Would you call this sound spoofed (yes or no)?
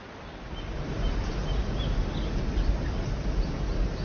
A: no